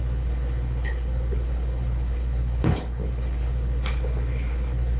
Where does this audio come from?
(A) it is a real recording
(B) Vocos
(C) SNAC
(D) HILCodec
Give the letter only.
D